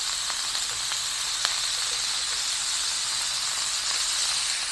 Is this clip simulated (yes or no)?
no